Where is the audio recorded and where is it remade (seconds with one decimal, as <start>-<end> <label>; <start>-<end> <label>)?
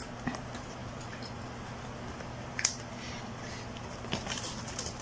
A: 0.0-5.0 remade